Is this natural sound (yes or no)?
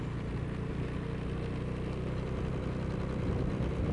yes